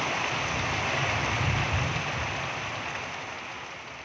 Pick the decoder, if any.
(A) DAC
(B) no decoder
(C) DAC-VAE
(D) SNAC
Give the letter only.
B